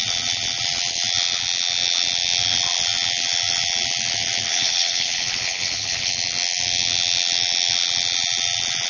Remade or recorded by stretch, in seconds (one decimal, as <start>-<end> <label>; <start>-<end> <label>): 0.0-4.5 recorded; 4.5-6.1 remade; 6.1-8.9 recorded